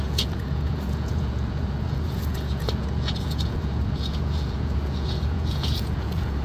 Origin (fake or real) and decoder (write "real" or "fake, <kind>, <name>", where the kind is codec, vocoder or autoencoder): fake, vocoder, Vocos